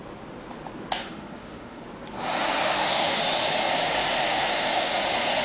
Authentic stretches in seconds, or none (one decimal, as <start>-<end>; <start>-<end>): 0.0-1.0; 1.8-2.6; 3.2-4.2; 4.9-5.4